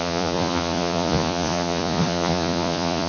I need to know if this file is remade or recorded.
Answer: remade